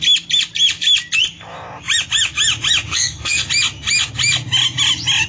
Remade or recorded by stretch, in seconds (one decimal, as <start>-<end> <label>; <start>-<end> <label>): 0.0-2.9 recorded; 2.9-3.5 remade; 3.5-5.3 recorded